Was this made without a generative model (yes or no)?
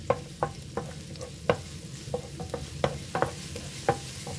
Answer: yes